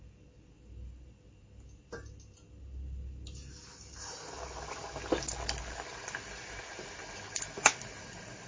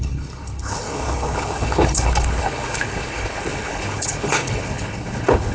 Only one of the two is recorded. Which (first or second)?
first